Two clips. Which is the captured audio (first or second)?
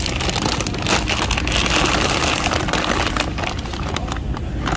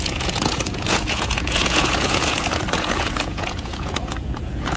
first